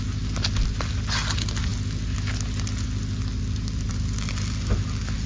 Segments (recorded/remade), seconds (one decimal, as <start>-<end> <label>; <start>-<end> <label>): 0.0-5.3 recorded